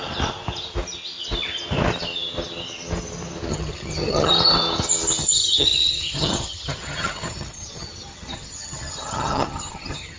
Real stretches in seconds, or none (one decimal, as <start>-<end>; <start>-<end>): 0.0-3.5; 4.3-5.2